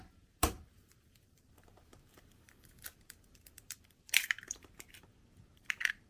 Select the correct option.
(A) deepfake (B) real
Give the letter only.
A